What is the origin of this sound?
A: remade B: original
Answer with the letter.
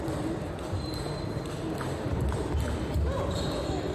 B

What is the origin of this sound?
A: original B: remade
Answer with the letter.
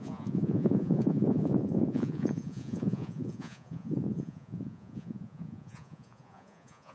B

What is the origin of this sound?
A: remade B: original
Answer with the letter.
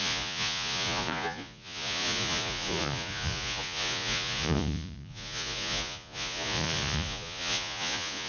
A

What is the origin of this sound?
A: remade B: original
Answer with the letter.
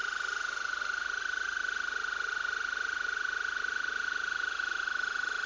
A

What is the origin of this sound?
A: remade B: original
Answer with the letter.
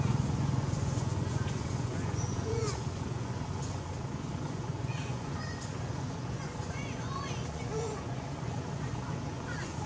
A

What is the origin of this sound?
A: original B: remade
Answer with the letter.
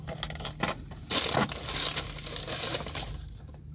A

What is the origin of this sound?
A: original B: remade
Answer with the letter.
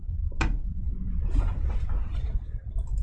A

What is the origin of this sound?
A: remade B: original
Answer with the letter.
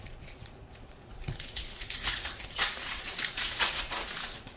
A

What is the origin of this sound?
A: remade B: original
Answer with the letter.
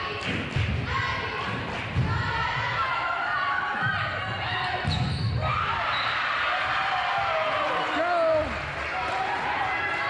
B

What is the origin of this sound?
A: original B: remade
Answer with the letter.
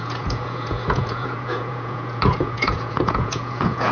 B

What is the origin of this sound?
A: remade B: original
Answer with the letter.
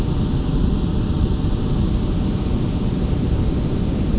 B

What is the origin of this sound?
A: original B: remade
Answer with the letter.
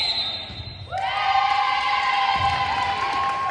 A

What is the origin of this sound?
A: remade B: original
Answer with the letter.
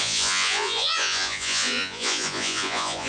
A